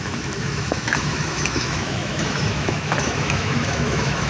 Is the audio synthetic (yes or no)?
yes